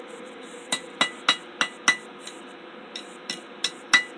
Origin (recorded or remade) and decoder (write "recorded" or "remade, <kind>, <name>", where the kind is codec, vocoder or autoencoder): recorded